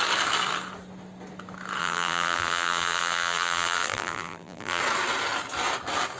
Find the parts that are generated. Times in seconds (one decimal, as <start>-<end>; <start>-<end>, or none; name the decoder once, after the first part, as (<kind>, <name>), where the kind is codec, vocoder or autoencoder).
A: 1.8-4.8 (vocoder, BigVGAN v2)